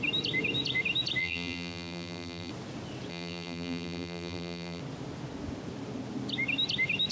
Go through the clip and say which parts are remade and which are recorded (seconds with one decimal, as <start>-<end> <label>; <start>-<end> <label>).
0.0-1.2 recorded; 1.2-2.5 remade; 2.5-3.1 recorded; 3.1-4.8 remade; 4.8-7.1 recorded